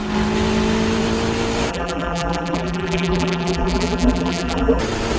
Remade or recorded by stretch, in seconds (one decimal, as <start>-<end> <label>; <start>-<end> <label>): 0.0-1.7 recorded; 1.7-4.8 remade; 4.8-5.2 recorded